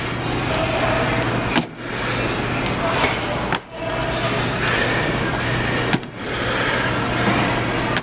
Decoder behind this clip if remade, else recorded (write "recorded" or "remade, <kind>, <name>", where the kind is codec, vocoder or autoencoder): recorded